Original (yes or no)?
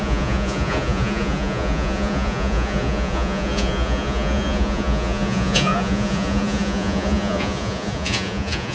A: no